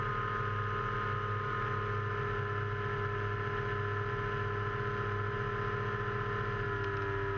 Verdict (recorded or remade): recorded